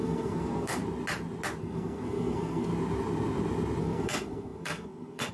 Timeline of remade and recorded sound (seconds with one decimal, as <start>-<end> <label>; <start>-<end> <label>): 0.0-0.8 remade; 0.8-1.6 recorded; 1.6-2.7 remade; 2.7-3.8 recorded; 3.8-5.3 remade

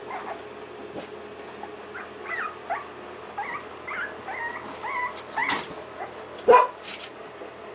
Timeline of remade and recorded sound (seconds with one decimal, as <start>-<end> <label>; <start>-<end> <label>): 0.0-7.7 recorded

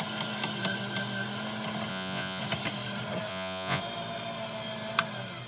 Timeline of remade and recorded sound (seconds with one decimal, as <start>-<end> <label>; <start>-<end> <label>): 0.0-1.9 recorded; 1.9-2.4 remade; 2.4-3.3 recorded; 3.3-3.8 remade; 3.8-5.5 recorded

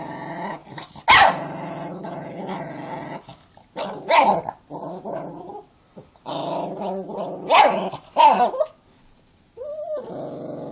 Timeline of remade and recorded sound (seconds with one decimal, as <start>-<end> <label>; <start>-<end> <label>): 0.0-10.7 recorded